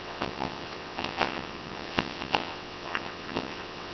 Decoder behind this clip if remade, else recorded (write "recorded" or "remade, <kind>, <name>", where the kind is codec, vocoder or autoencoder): remade, vocoder, WaveNeXt